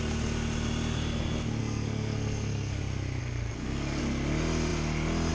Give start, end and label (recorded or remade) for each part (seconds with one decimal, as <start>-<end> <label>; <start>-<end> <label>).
0.0-1.6 recorded; 1.6-2.8 remade; 2.8-3.2 recorded; 3.2-4.0 remade; 4.0-5.3 recorded